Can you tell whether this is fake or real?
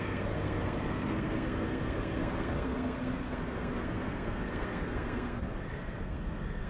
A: fake